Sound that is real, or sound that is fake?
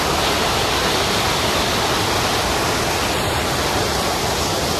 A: real